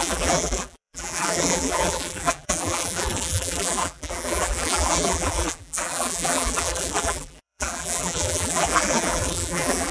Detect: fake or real fake